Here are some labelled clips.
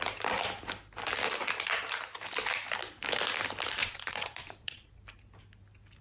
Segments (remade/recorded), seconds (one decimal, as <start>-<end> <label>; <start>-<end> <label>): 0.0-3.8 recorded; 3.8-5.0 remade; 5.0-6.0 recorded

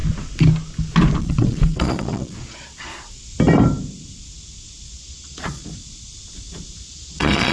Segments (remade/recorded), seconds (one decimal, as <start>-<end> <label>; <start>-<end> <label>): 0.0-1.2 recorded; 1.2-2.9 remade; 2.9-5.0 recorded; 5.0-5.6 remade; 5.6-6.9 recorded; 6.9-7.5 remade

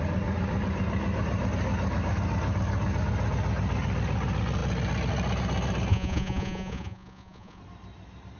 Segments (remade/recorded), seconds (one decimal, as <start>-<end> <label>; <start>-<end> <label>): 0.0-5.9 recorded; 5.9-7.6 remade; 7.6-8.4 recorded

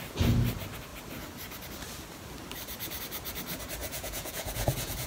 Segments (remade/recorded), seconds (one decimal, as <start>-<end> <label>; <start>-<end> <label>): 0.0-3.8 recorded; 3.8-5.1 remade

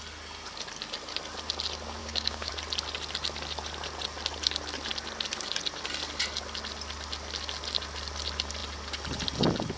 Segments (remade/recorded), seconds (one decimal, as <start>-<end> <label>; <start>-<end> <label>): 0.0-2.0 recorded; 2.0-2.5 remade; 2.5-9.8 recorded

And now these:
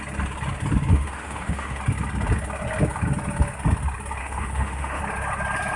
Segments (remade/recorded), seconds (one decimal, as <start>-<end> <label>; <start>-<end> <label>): 0.0-0.9 recorded; 0.9-1.8 remade; 1.8-4.2 recorded; 4.2-5.0 remade; 5.0-5.8 recorded

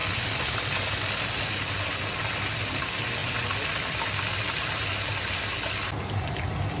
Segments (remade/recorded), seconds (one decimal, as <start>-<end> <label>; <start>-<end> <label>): 0.0-6.8 recorded

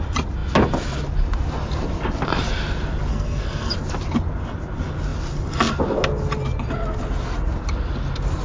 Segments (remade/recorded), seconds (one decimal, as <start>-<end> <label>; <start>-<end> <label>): 0.0-3.1 recorded; 3.1-3.7 remade; 3.7-8.4 recorded